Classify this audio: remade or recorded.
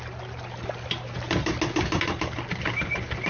recorded